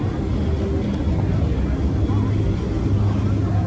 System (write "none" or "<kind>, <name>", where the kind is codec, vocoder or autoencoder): none